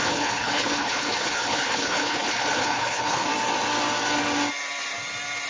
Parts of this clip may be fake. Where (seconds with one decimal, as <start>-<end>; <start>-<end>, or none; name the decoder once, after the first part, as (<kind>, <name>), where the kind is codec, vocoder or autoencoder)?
0.0-3.3 (codec, HILCodec)